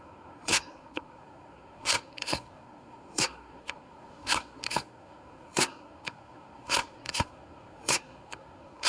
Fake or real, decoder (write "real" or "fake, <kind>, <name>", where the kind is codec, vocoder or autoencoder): fake, codec, SNAC